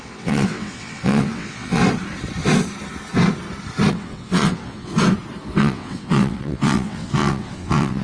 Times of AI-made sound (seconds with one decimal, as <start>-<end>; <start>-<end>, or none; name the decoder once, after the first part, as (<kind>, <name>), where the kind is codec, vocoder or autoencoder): 0.0-1.8 (vocoder, WaveNeXt); 3.9-4.9; 5.6-8.0